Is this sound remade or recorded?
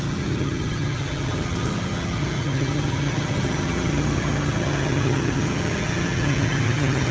remade